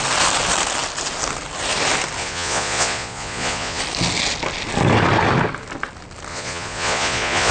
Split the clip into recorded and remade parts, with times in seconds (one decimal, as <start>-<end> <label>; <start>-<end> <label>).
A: 0.0-2.2 recorded; 2.2-3.8 remade; 3.8-6.3 recorded; 6.3-7.5 remade